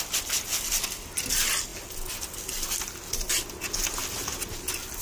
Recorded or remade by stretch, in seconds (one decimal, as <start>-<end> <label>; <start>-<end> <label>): 0.0-5.0 recorded